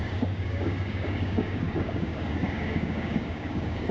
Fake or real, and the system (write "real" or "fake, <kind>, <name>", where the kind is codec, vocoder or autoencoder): fake, codec, DAC